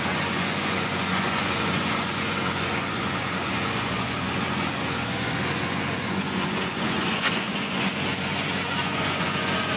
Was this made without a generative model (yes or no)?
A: no